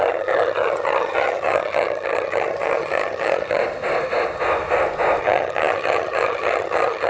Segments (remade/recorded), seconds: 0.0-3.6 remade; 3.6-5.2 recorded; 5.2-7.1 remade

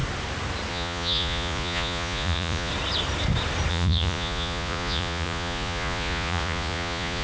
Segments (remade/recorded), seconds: 0.0-0.7 recorded; 0.7-2.7 remade; 2.7-3.7 recorded; 3.7-7.2 remade

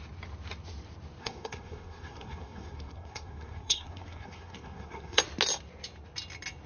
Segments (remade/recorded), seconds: 0.0-1.2 recorded; 1.2-5.2 remade; 5.2-6.7 recorded

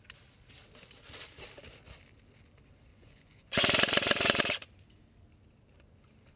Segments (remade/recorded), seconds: 0.0-2.9 recorded; 2.9-4.4 remade; 4.4-6.4 recorded

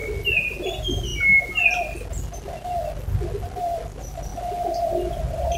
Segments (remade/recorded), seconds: 0.0-0.7 recorded; 0.7-1.1 remade; 1.1-3.6 recorded; 3.6-4.3 remade; 4.3-5.1 recorded; 5.1-5.6 remade

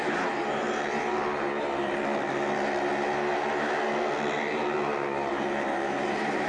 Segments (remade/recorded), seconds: 0.0-2.0 remade; 2.0-5.3 recorded; 5.3-6.5 remade